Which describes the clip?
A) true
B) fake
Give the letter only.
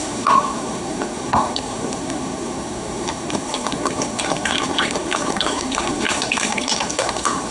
B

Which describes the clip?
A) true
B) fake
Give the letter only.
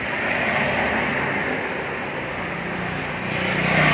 A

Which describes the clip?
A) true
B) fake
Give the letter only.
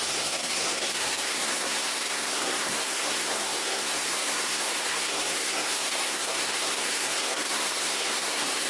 B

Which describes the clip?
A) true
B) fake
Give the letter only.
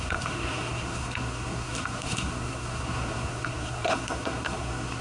B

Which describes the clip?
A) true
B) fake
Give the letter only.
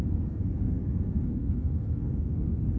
B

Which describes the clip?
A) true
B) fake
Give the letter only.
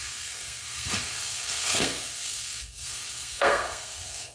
B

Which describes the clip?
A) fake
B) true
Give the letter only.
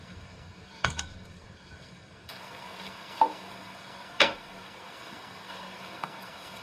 A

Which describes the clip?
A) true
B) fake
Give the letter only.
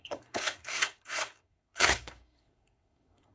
B